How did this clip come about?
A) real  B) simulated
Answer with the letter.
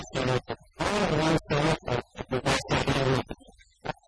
A